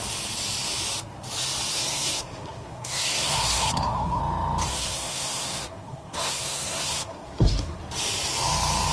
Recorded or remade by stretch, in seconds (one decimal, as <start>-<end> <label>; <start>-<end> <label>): 0.0-1.7 recorded; 1.7-4.2 remade; 4.2-4.7 recorded; 4.7-7.8 remade; 7.8-8.9 recorded